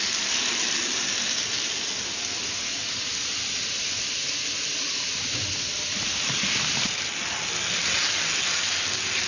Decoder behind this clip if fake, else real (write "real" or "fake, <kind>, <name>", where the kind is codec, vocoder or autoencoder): real